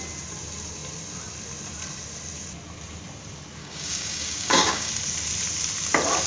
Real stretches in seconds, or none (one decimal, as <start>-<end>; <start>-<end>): 0.0-3.6; 4.9-6.3